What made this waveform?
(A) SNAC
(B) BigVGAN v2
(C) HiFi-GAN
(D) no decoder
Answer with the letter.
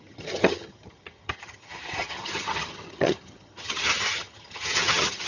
C